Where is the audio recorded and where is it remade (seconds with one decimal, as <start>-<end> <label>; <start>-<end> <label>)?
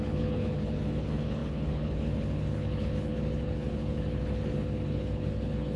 0.0-5.8 remade